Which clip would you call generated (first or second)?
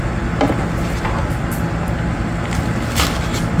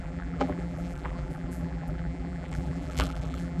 second